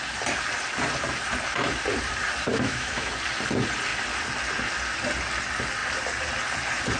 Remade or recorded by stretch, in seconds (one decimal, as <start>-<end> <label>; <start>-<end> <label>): 0.0-2.5 recorded; 2.5-3.1 remade; 3.1-7.0 recorded

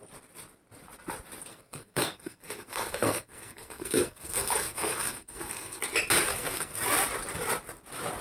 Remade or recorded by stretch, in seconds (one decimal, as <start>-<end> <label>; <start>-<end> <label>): 0.0-1.5 recorded; 1.5-5.8 remade; 5.8-6.3 recorded; 6.3-6.8 remade; 6.8-8.2 recorded

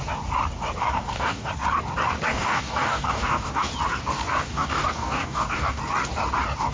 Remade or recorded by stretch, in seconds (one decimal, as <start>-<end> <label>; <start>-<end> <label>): 0.0-0.8 recorded; 0.8-1.5 remade; 1.5-2.3 recorded; 2.3-3.7 remade; 3.7-4.4 recorded; 4.4-5.8 remade; 5.8-6.7 recorded